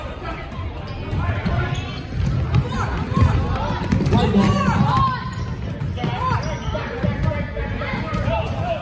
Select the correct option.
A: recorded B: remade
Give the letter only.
A